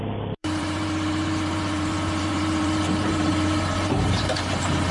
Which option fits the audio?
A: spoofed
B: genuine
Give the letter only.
A